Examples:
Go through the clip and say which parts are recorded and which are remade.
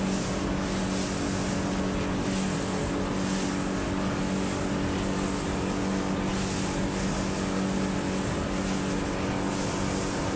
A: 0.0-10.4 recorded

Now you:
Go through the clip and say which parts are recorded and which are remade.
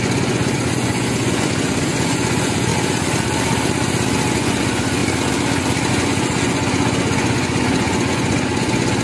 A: 0.0-2.7 remade; 2.7-4.3 recorded; 4.3-5.0 remade; 5.0-5.9 recorded; 5.9-9.0 remade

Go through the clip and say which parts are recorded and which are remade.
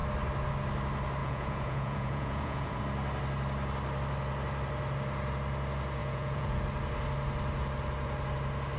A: 0.0-1.2 recorded; 1.2-2.8 remade; 2.8-6.0 recorded; 6.0-6.6 remade; 6.6-8.8 recorded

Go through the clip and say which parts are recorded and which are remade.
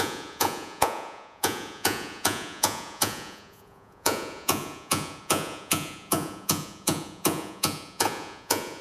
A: 0.0-8.8 remade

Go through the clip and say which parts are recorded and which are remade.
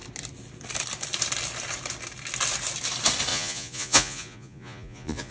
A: 0.0-3.3 recorded; 3.3-5.3 remade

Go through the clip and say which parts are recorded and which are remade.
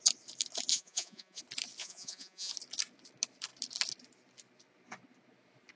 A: 0.0-0.7 recorded; 0.7-1.4 remade; 1.4-1.8 recorded; 1.8-2.5 remade; 2.5-5.8 recorded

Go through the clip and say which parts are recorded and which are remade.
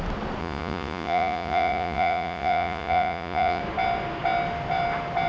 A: 0.0-0.4 recorded; 0.4-3.6 remade; 3.6-5.3 recorded